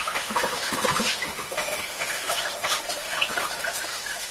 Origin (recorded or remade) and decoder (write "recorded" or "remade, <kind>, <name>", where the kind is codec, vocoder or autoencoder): remade, autoencoder, DAC-VAE